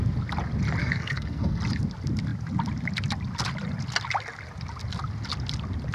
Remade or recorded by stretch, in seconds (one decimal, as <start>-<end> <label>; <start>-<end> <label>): 0.0-0.8 recorded; 0.8-1.6 remade; 1.6-5.9 recorded